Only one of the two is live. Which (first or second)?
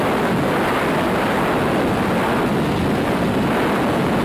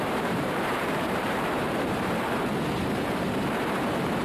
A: first